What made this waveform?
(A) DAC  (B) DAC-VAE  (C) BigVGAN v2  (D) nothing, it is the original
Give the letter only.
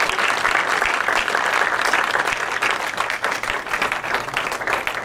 D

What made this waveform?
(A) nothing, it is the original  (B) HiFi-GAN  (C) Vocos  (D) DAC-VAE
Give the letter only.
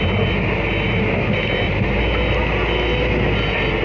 A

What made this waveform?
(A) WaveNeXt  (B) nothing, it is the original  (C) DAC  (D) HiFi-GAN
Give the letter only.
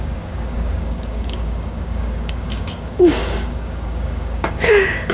C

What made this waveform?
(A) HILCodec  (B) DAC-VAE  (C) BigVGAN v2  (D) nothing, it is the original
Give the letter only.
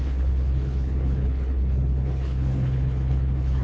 A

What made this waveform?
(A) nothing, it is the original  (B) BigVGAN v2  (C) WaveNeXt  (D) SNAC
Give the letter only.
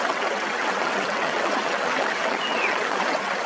C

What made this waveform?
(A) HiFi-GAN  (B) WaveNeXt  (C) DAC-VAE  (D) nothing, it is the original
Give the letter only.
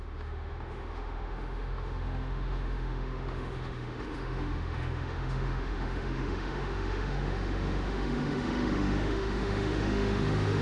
C